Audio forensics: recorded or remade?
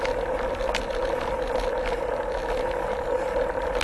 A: recorded